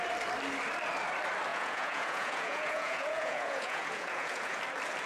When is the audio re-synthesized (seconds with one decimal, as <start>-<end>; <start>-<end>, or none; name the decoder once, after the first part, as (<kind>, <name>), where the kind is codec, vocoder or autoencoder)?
1.5-4.6 (vocoder, Vocos)